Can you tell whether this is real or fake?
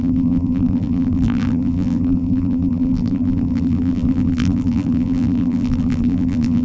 fake